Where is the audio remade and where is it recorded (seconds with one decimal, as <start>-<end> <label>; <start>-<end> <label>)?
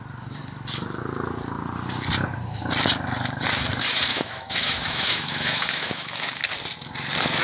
0.0-4.1 recorded; 4.1-6.4 remade; 6.4-7.4 recorded